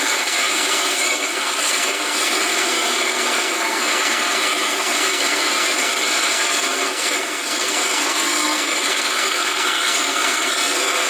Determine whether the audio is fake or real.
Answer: fake